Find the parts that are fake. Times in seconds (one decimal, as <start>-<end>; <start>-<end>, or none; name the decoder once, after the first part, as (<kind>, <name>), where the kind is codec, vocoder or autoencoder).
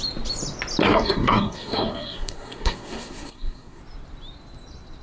0.8-3.8 (codec, SNAC)